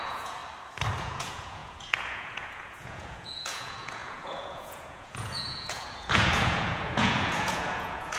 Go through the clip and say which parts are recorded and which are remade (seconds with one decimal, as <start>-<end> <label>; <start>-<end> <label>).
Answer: 0.0-0.4 remade; 0.4-1.0 recorded; 1.0-8.2 remade